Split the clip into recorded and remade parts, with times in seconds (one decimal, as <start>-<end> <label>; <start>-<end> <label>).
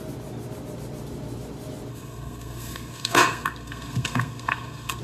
0.0-1.9 recorded; 1.9-5.0 remade